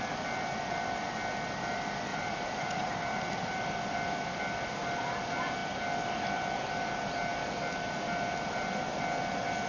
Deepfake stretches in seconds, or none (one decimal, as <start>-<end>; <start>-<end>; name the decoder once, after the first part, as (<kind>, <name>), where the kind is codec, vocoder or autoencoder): 2.1-2.9 (vocoder, Vocos)